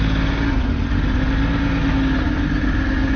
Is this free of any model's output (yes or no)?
yes